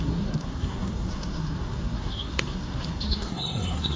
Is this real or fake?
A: fake